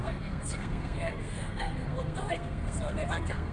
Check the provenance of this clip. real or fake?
fake